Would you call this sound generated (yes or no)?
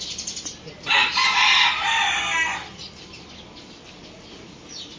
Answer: no